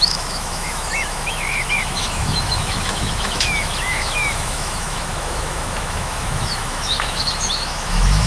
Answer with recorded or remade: remade